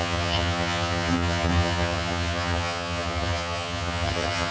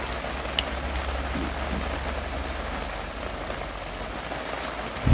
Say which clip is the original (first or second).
second